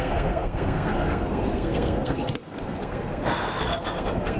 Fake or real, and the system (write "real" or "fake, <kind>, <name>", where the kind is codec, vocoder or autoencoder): fake, codec, SNAC